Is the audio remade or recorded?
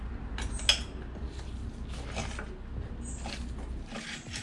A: recorded